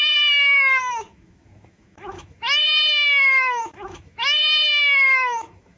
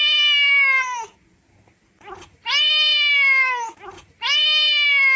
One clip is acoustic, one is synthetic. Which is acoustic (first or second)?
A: second